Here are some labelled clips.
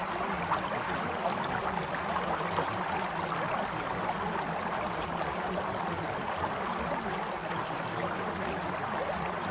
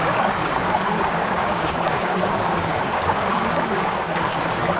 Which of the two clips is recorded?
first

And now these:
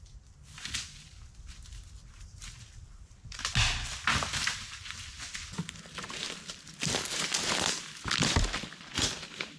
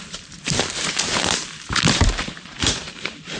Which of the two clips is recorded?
first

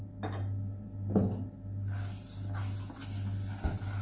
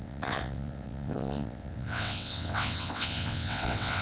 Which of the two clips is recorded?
first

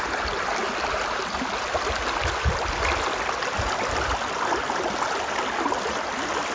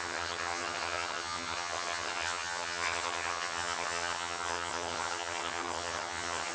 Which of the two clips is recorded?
first